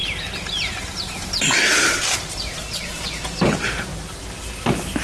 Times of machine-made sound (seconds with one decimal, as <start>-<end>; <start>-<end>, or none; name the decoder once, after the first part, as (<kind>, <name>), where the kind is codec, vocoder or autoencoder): 0.0-3.9 (vocoder, BigVGAN v2)